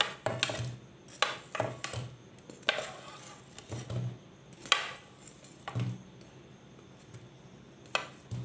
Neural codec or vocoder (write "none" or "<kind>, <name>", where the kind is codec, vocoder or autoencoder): none